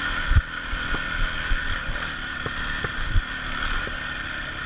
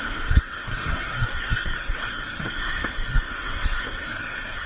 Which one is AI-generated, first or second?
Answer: second